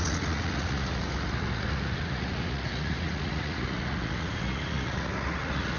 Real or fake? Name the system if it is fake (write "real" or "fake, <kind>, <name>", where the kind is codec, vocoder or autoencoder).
fake, vocoder, Vocos